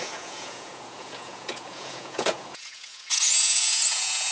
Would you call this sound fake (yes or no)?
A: yes